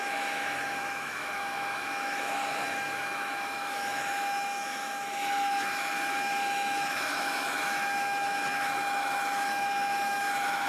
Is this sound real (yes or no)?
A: no